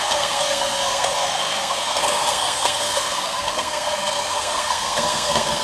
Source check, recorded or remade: remade